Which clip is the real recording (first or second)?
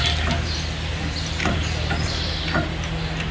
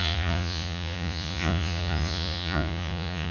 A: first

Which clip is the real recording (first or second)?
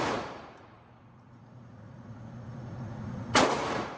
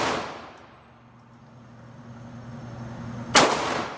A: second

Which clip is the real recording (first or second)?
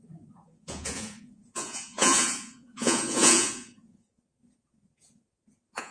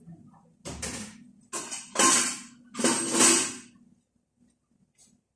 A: second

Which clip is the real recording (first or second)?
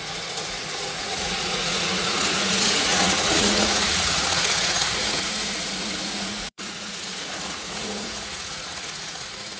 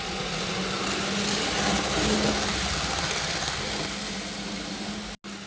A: second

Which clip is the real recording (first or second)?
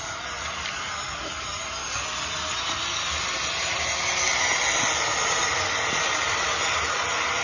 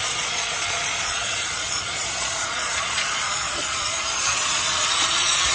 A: first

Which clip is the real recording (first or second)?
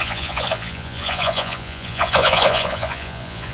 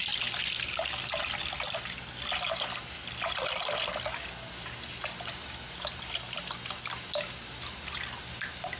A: second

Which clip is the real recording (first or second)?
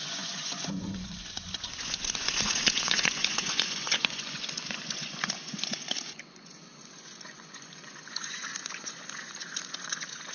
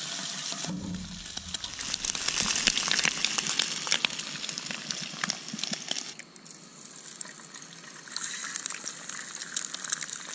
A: second